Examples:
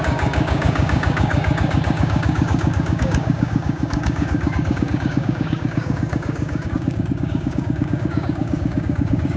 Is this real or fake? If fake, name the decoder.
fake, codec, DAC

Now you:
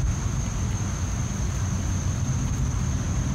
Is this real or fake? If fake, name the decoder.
real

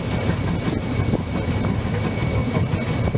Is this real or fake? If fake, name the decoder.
real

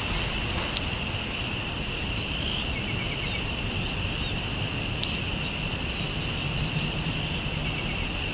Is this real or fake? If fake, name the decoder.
real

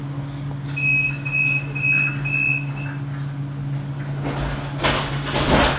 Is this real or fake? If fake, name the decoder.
real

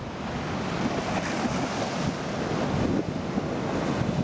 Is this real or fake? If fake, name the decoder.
real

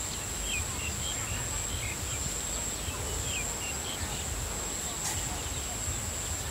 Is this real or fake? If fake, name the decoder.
real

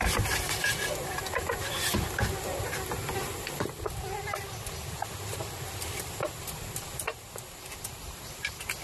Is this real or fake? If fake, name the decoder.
real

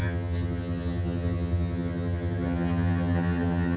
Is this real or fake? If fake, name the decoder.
fake, vocoder, HiFi-GAN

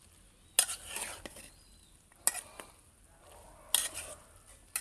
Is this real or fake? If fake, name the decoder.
real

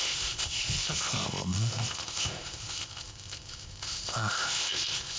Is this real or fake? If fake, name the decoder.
fake, codec, ZipCodec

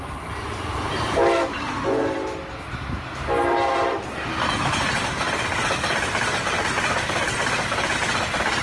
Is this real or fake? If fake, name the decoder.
real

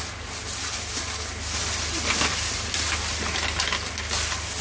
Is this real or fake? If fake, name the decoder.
real